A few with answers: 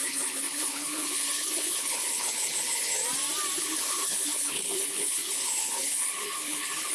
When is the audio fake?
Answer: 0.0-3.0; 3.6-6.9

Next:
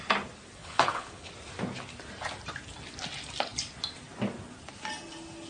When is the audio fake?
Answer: 0.6-1.3